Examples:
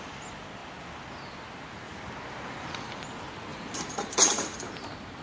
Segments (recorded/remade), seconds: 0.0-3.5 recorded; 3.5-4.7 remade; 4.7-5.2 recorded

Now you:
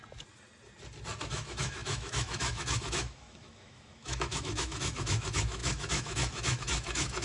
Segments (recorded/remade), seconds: 0.0-1.2 recorded; 1.2-7.2 remade

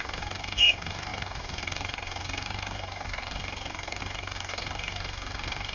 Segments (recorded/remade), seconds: 0.0-5.7 remade